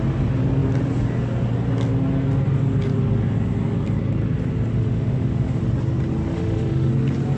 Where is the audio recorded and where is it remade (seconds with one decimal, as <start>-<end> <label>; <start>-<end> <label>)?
0.0-4.7 recorded; 4.7-5.6 remade; 5.6-6.2 recorded; 6.2-6.9 remade; 6.9-7.4 recorded

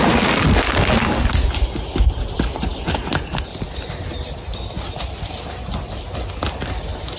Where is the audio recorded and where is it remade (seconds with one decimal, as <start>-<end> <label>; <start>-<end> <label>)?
0.0-7.2 recorded

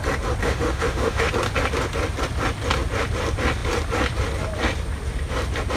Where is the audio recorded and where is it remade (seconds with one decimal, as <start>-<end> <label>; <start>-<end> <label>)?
0.0-0.4 recorded; 0.4-1.3 remade; 1.3-5.8 recorded